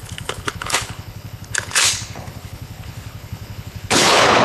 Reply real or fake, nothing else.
fake